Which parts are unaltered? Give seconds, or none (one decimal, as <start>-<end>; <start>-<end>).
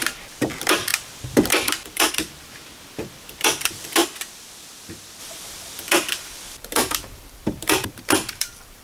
4.0-5.2